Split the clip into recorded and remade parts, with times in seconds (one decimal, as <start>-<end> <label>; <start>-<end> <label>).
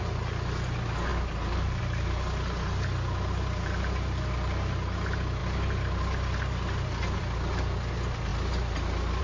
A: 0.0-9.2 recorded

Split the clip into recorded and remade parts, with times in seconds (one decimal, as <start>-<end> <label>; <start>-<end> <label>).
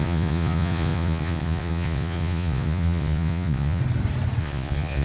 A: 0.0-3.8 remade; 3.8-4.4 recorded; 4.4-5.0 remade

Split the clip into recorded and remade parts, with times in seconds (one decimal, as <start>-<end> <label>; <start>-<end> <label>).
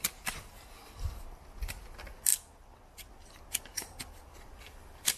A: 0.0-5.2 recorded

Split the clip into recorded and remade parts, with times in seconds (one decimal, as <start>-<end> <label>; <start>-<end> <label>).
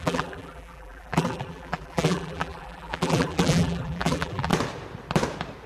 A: 0.0-4.5 remade; 4.5-5.7 recorded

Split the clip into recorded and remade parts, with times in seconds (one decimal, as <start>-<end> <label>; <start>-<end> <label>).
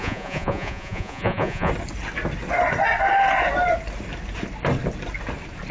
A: 0.0-1.7 remade; 1.7-5.7 recorded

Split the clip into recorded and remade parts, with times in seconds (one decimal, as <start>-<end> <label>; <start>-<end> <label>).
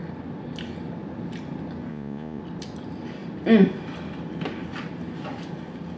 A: 0.0-1.9 recorded; 1.9-2.4 remade; 2.4-6.0 recorded